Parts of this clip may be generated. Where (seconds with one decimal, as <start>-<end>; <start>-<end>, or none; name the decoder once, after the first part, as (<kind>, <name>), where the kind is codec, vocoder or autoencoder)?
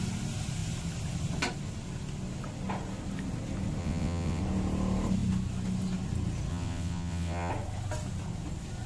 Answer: 3.8-4.4 (vocoder, WaveNeXt); 6.5-7.5